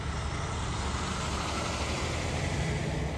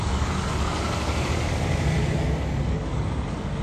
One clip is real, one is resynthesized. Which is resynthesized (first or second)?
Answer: second